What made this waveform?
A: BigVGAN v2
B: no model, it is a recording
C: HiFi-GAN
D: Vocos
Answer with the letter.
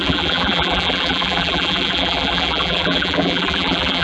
A